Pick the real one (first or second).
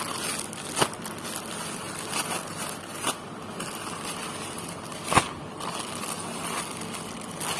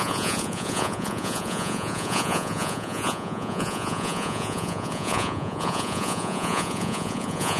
first